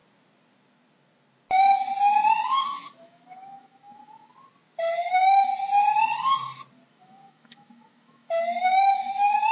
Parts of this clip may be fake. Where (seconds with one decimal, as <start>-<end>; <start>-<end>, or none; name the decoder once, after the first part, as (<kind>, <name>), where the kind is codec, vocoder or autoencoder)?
2.4-4.3 (autoencoder, DAC-VAE); 5.0-5.5; 6.9-9.5